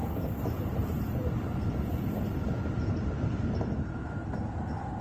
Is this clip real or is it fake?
real